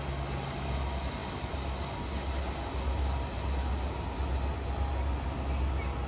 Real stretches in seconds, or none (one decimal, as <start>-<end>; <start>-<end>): 0.0-6.1

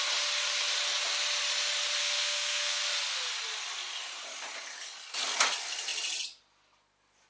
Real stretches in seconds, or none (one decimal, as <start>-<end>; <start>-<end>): 0.0-2.0; 2.8-7.3

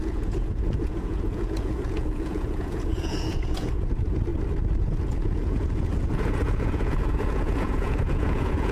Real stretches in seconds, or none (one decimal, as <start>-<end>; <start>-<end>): 4.3-4.8

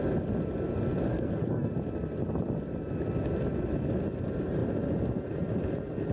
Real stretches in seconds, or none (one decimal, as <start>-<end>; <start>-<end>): 0.0-1.1; 1.7-6.1

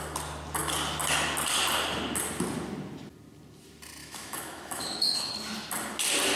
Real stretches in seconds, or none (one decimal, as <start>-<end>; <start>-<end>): 0.0-4.0; 5.3-6.4

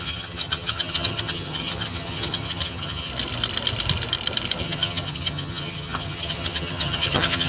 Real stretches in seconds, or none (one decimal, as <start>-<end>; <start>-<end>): 3.1-4.6